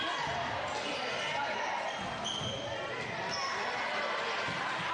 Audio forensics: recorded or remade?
recorded